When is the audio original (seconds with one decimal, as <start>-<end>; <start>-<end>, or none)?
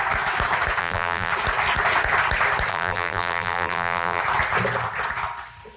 0.0-0.8; 1.3-2.7; 4.2-5.8